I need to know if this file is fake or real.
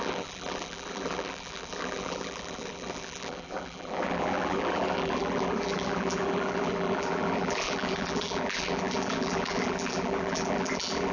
fake